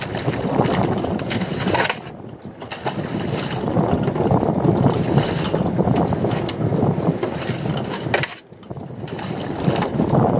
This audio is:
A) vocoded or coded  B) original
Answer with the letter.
B